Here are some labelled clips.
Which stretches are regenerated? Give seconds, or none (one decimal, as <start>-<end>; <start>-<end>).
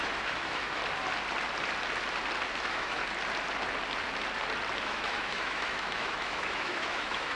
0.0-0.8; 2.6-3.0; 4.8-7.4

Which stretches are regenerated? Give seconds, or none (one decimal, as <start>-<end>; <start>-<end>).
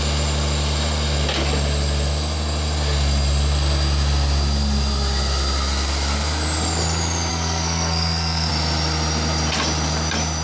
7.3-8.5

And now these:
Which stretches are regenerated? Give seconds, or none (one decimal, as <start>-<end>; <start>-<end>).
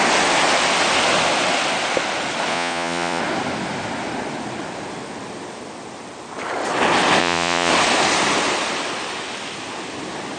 2.5-3.2; 7.2-7.7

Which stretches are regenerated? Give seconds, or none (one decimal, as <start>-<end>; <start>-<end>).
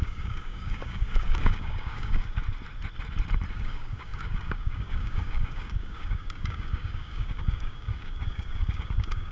0.0-2.4; 3.5-9.3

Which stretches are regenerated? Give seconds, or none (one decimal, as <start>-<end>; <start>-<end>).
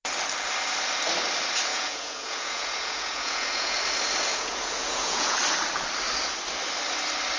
1.7-3.8; 4.3-5.4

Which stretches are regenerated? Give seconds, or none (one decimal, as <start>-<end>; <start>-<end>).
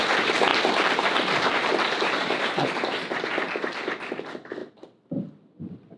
0.5-2.7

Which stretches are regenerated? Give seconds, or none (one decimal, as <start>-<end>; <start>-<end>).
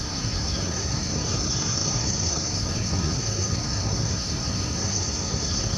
0.0-5.8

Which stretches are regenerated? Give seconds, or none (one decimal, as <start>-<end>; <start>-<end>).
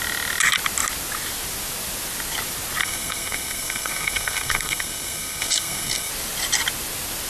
2.8-6.1